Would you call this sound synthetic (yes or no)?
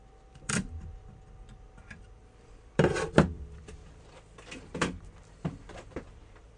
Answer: yes